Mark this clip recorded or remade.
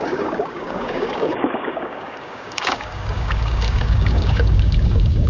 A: remade